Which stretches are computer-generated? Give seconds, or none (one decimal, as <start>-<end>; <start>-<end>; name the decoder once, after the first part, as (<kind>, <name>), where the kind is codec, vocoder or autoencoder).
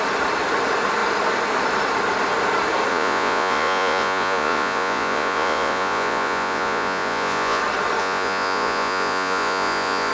2.9-7.6 (vocoder, Vocos); 8.0-10.1